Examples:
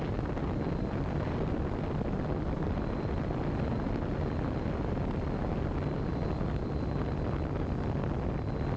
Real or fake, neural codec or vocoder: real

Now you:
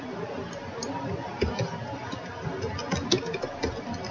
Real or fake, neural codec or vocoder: real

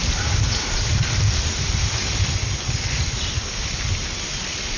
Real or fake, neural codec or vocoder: real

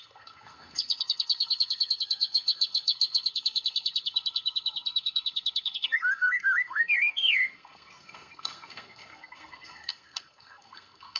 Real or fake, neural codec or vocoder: fake, codec, SNAC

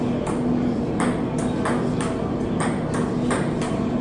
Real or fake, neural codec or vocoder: real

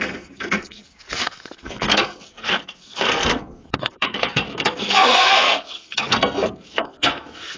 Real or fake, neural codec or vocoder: fake, codec, SNAC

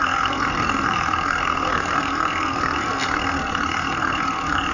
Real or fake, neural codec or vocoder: fake, codec, SNAC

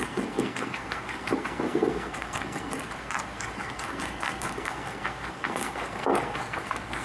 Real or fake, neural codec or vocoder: fake, codec, SNAC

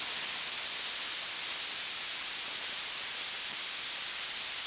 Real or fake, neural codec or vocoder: real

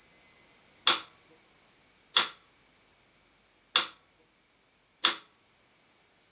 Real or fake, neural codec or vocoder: real